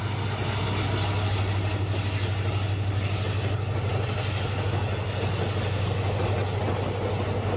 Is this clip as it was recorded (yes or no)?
yes